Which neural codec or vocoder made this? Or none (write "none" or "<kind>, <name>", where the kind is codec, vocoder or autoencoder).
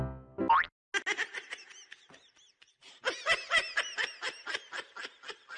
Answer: none